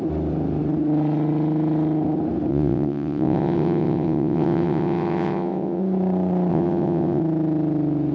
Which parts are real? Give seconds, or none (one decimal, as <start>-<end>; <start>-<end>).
0.0-2.5; 5.8-6.5; 7.2-8.1